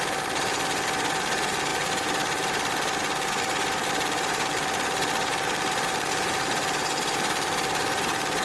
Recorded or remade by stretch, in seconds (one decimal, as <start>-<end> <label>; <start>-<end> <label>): 0.0-0.5 remade; 0.5-1.1 recorded; 1.1-8.4 remade